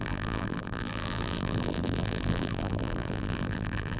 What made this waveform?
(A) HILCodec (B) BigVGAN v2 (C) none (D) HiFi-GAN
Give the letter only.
B